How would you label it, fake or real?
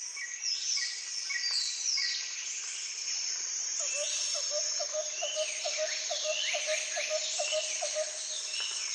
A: real